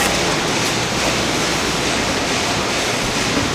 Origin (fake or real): real